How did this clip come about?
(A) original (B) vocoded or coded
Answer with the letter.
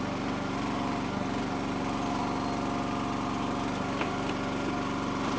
A